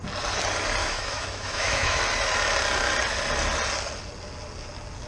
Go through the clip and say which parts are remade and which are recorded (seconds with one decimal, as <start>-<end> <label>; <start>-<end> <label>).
0.0-0.8 recorded; 0.8-2.0 remade; 2.0-5.1 recorded